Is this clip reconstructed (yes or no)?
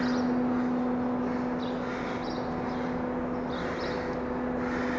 no